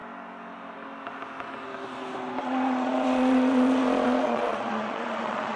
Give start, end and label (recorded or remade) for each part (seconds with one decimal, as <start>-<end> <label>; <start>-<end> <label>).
0.0-2.4 recorded; 2.4-5.6 remade